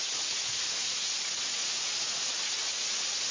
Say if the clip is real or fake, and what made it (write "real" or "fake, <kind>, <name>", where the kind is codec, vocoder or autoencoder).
fake, vocoder, Vocos